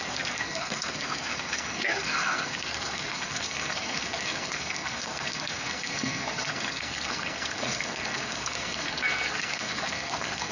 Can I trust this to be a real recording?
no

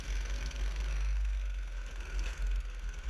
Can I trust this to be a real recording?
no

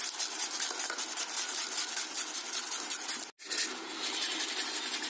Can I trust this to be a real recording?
yes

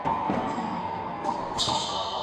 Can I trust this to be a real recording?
no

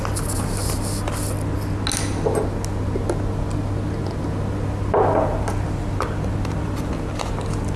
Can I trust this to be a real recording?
yes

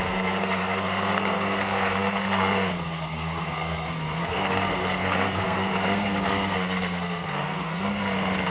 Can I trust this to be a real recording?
no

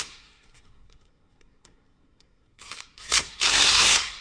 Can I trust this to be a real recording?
no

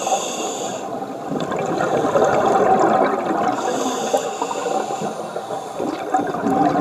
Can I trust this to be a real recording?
yes